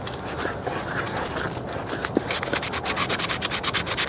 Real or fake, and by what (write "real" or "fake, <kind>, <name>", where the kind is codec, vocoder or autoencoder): real